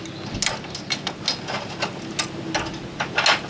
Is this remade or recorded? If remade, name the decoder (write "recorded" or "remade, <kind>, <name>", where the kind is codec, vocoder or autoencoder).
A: recorded